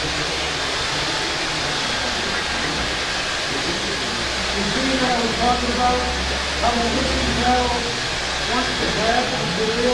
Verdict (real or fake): real